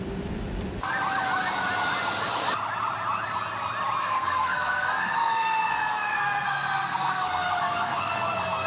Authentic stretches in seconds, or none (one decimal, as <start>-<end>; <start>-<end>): 0.0-4.0